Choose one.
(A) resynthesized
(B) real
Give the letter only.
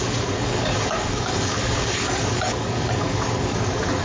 A